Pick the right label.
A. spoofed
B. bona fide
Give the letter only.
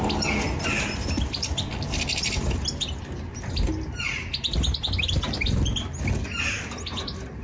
B